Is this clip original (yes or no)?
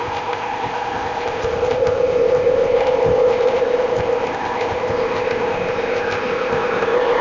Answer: no